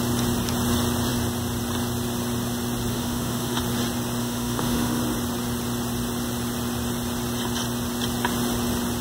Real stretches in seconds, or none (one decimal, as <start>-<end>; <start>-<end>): 0.0-2.9; 3.6-4.2; 5.0-9.0